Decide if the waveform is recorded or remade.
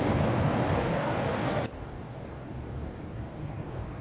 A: remade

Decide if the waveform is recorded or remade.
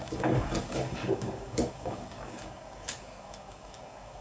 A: remade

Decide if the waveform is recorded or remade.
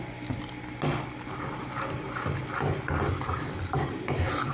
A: recorded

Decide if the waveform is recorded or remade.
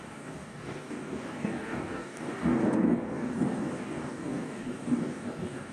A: remade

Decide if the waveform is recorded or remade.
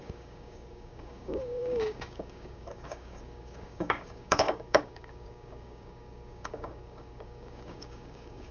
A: remade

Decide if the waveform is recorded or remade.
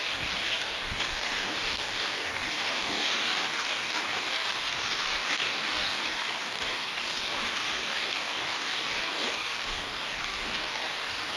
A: remade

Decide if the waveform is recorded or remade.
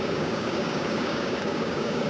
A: remade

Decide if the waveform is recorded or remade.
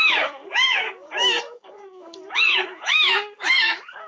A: remade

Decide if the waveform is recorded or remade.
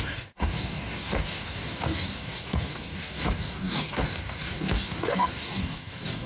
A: remade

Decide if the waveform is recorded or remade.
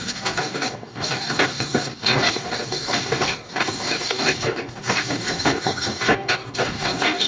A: remade